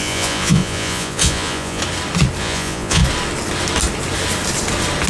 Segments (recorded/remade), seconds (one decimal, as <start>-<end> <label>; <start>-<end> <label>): 0.0-1.8 remade; 1.8-2.4 recorded; 2.4-3.0 remade; 3.0-5.1 recorded